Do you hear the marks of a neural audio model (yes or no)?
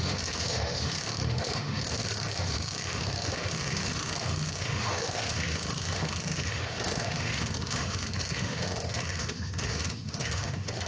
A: yes